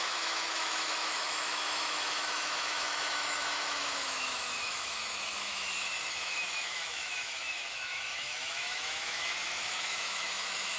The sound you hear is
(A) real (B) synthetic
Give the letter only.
B